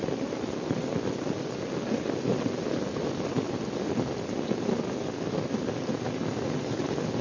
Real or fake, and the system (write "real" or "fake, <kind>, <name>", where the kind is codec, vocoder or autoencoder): real